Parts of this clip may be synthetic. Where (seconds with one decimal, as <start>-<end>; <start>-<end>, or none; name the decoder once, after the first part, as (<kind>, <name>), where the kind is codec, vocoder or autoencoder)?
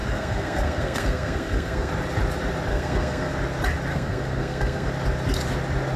0.0-1.9 (codec, SNAC); 2.7-3.3; 3.9-4.9